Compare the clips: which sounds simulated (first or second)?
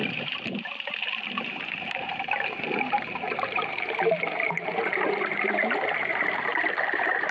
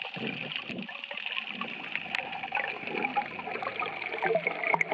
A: first